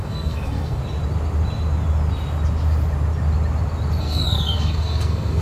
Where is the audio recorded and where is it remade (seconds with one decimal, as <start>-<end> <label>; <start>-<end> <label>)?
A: 0.0-0.8 remade; 0.8-4.0 recorded; 4.0-5.4 remade